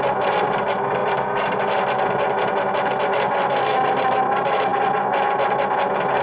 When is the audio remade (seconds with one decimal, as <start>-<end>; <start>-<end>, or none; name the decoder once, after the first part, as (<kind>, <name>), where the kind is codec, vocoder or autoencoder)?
none